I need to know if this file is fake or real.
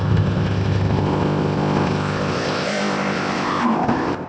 fake